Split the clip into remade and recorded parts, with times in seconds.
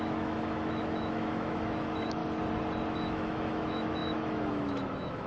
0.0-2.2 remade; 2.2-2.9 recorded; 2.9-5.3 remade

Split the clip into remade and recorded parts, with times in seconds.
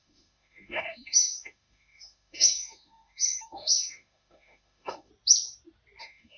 0.0-5.1 remade; 5.1-6.0 recorded; 6.0-6.4 remade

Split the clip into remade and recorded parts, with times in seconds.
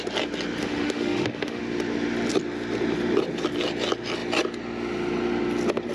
0.0-0.6 recorded; 0.6-1.6 remade; 1.6-5.9 recorded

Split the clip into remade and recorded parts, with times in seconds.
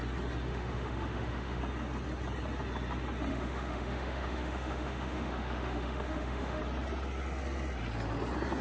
0.0-0.5 recorded; 0.5-1.6 remade; 1.6-3.3 recorded; 3.3-6.6 remade; 6.6-8.6 recorded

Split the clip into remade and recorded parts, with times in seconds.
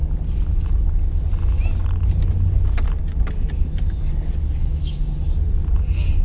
0.0-4.6 recorded; 4.6-5.1 remade; 5.1-6.2 recorded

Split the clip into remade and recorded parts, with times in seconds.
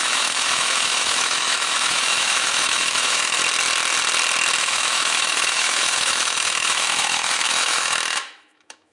0.0-3.4 remade; 3.4-4.6 recorded; 4.6-8.9 remade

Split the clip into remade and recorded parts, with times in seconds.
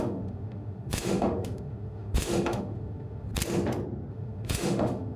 0.0-3.3 remade; 3.3-4.1 recorded; 4.1-5.2 remade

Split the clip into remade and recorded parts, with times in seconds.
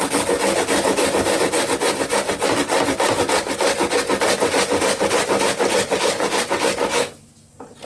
0.0-6.9 recorded; 6.9-7.5 remade; 7.5-7.9 recorded